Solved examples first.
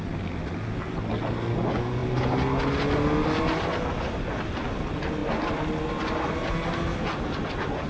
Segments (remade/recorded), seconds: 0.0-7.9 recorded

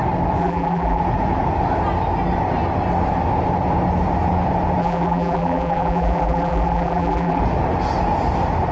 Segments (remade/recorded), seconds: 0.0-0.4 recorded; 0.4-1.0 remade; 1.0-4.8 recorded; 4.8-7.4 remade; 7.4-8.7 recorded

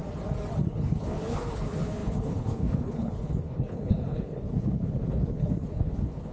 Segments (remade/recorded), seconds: 0.0-0.7 recorded; 0.7-6.3 remade

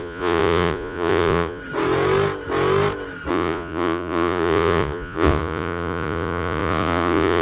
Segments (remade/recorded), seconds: 0.0-1.6 remade; 1.6-3.3 recorded; 3.3-7.4 remade